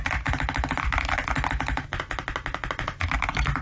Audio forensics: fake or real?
real